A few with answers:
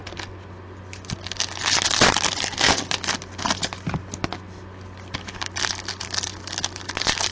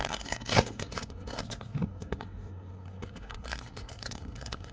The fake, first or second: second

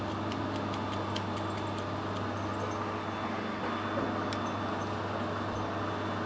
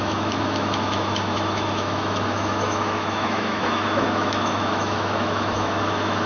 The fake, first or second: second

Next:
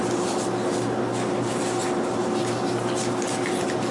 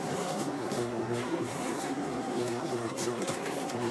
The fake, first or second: second